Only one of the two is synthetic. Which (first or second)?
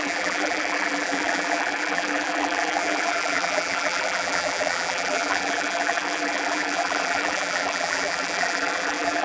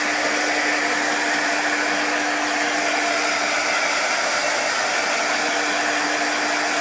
first